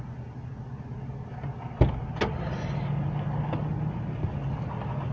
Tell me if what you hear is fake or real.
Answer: real